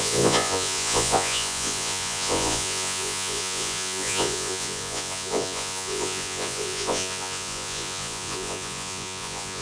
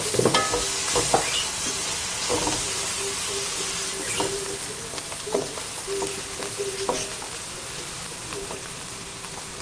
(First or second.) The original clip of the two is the second